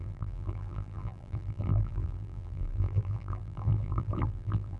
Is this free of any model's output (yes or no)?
no